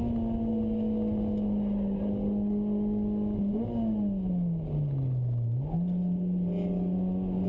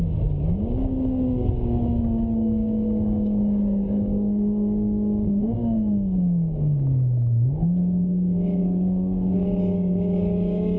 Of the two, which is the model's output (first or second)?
second